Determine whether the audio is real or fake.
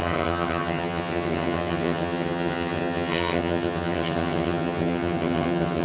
fake